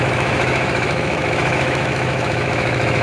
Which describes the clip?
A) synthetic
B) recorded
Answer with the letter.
A